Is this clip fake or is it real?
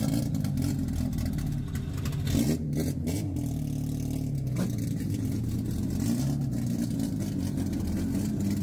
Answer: real